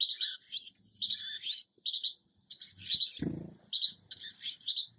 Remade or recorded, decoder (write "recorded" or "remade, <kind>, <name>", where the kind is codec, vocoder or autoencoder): recorded